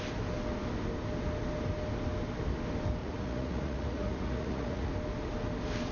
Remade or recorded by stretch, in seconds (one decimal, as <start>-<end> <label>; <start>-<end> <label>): 0.0-3.0 recorded; 3.0-4.9 remade; 4.9-5.9 recorded